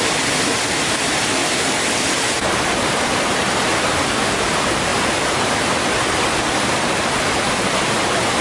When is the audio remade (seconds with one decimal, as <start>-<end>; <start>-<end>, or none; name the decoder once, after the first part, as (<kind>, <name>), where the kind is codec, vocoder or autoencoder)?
0.0-1.4 (vocoder, BigVGAN v2); 3.5-4.9; 7.7-8.4